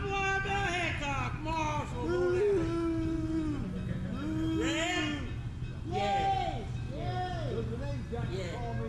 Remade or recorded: recorded